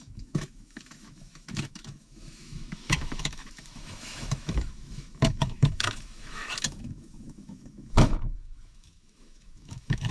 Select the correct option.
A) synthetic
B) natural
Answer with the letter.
A